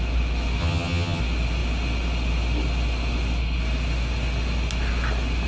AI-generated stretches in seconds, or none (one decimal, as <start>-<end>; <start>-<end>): 0.6-1.2